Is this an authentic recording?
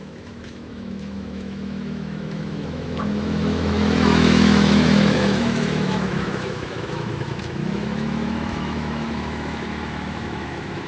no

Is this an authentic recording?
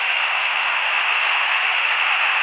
no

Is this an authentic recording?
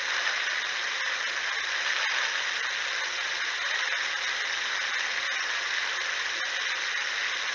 yes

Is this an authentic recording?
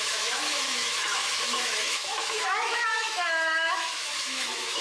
no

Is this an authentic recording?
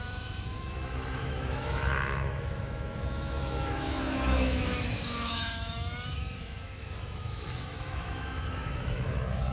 no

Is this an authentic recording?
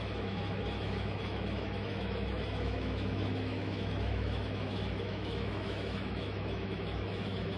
no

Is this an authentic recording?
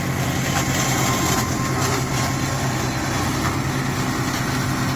yes